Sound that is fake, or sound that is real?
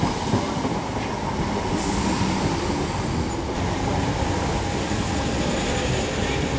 real